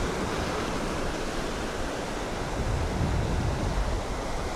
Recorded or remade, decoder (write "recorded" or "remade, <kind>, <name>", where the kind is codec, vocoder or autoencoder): recorded